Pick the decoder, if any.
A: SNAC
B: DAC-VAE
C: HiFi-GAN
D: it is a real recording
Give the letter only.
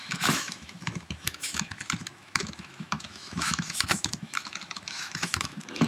B